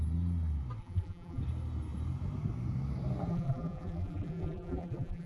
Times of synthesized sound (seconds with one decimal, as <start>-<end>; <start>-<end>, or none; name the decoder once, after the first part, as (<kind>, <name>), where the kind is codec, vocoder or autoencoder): 0.8-1.4 (vocoder, BigVGAN v2); 3.3-5.3